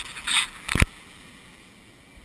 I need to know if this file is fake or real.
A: fake